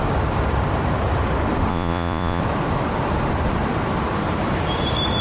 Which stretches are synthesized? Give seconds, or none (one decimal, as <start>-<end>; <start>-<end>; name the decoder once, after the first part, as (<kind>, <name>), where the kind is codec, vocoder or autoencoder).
1.7-2.4 (vocoder, Vocos)